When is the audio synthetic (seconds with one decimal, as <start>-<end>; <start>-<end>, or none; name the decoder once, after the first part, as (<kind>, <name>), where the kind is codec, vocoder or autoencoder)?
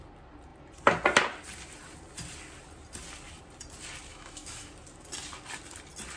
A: 4.1-4.7 (autoencoder, DAC-VAE)